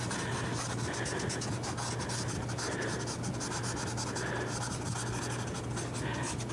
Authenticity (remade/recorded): recorded